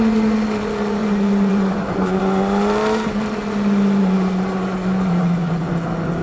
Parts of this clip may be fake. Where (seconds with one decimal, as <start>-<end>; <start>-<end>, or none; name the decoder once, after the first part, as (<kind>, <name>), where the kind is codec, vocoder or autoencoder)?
1.0-2.2 (vocoder, Vocos); 4.0-5.7